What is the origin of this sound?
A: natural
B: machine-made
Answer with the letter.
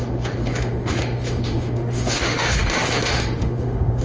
B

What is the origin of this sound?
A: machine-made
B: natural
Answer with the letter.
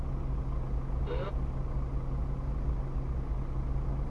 B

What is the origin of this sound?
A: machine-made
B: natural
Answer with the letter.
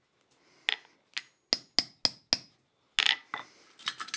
B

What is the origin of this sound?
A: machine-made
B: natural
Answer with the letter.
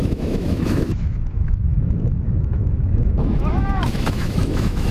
A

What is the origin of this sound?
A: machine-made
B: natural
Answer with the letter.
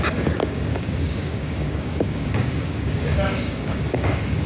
A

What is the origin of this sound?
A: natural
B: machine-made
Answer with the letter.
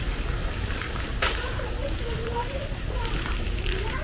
B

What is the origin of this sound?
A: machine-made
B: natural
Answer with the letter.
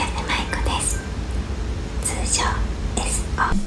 B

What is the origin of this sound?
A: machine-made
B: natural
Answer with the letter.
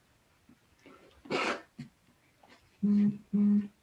B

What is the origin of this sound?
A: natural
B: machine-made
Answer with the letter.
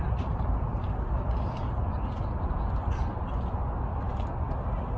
A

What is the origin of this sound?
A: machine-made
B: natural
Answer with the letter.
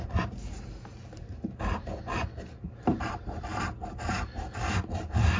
A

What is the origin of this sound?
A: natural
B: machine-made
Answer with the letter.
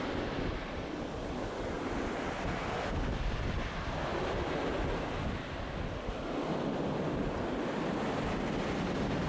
A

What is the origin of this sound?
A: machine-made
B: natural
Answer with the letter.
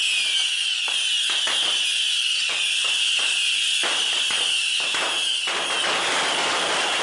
B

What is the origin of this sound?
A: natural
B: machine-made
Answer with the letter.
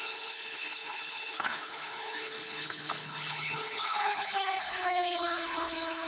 B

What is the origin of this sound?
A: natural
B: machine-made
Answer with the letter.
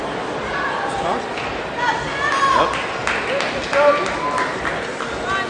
A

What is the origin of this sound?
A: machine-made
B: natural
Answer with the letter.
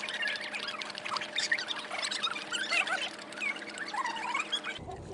B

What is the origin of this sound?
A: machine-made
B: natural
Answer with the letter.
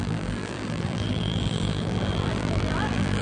A